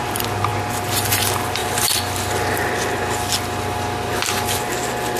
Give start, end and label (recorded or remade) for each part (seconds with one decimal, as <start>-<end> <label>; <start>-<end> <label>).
0.0-5.2 recorded